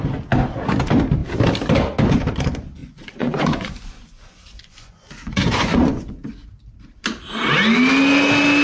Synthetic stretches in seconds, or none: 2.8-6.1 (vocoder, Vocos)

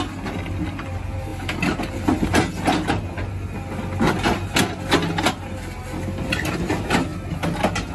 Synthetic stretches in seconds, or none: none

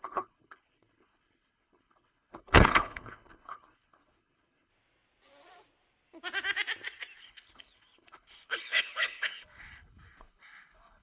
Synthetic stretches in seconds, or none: 0.0-4.7 (codec, HILCodec); 7.2-11.0